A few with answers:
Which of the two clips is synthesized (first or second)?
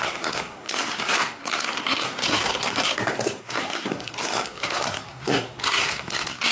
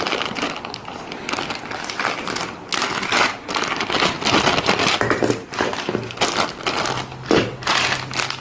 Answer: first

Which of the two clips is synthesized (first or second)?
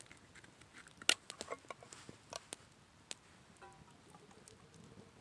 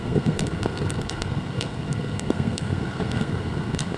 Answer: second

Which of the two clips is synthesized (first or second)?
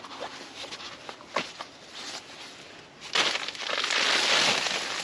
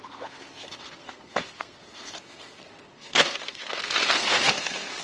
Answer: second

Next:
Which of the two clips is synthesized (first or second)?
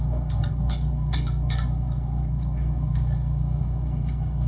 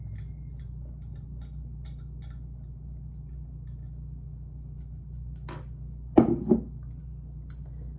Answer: first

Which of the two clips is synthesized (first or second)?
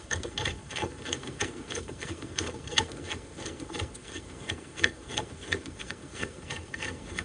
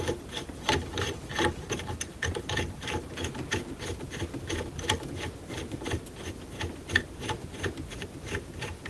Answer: first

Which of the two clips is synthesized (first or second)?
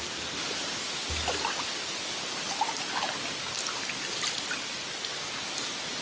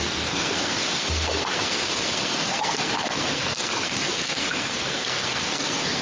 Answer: second